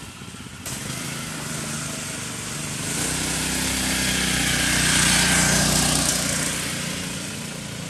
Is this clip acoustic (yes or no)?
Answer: yes